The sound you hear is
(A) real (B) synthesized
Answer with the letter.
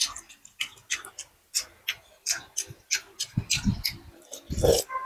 A